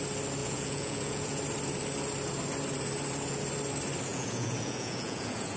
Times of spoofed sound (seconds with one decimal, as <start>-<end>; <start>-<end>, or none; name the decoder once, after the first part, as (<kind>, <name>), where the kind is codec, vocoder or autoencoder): 0.4-1.4 (vocoder, Vocos); 4.1-5.6